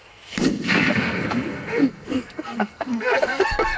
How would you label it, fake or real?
fake